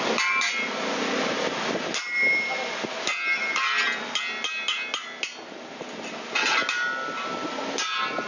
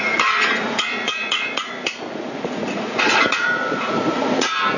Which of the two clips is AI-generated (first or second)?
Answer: second